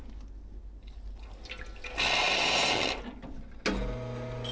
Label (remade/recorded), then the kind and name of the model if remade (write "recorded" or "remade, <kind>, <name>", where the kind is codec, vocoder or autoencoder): recorded